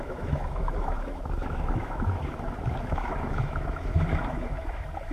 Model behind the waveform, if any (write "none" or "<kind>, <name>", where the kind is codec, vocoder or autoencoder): autoencoder, DAC-VAE